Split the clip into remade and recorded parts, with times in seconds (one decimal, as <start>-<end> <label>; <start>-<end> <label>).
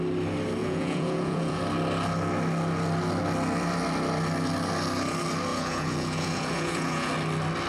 0.0-0.6 recorded; 0.6-1.6 remade; 1.6-5.5 recorded; 5.5-7.1 remade; 7.1-7.7 recorded